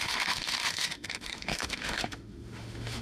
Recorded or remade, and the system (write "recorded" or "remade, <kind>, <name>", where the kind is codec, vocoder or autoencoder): remade, autoencoder, DAC-VAE